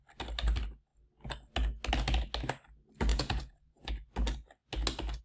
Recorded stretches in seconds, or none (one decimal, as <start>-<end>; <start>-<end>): 0.0-3.1; 3.9-5.2